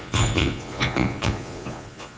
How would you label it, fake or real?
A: fake